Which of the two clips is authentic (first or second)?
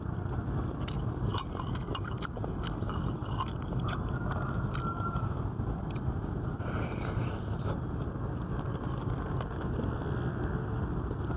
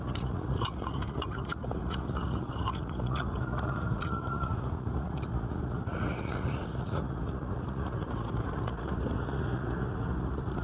first